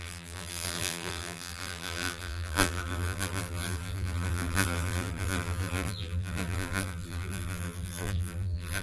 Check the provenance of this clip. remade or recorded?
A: remade